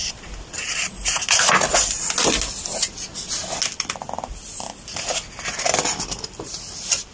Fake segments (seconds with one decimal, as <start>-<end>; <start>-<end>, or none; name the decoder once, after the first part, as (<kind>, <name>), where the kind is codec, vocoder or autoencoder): none